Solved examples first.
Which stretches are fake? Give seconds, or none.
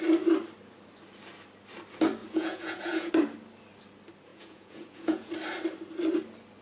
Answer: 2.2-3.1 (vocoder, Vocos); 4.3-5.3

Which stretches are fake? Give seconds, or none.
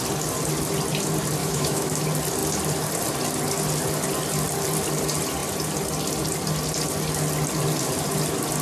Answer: 1.4-2.0 (autoencoder, DAC-VAE)